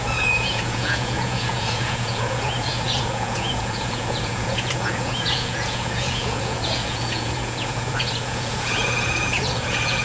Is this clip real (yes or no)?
no